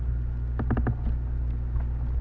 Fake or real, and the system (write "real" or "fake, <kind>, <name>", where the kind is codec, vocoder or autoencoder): real